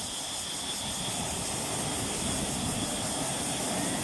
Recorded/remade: recorded